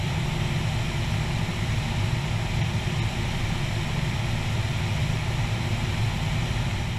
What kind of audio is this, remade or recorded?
recorded